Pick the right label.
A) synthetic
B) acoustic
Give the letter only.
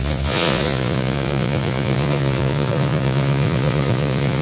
A